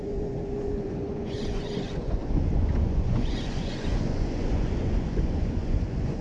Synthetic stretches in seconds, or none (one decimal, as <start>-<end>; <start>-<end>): 0.0-6.2